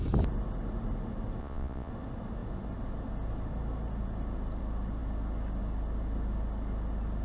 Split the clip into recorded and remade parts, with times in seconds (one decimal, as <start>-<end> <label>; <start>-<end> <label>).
0.0-1.4 recorded; 1.4-1.9 remade; 1.9-7.2 recorded